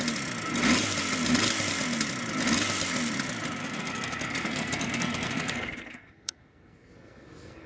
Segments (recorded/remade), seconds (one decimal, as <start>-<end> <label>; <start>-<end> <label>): 0.0-3.6 recorded; 3.6-7.7 remade